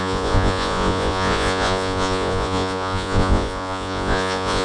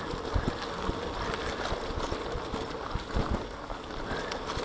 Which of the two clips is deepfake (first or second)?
first